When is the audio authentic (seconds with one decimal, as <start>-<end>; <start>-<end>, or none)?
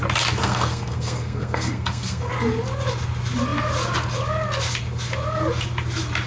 0.0-0.4; 2.3-6.3